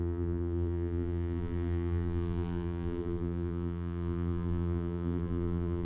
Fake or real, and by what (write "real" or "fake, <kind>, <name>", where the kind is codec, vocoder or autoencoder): fake, vocoder, BigVGAN v2